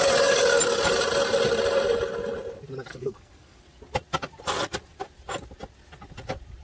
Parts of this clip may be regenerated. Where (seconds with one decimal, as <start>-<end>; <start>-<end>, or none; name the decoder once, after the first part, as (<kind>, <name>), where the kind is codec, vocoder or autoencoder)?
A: 2.9-3.6 (codec, SNAC)